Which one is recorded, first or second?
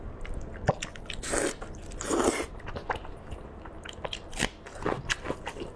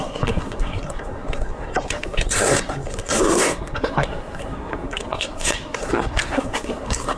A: first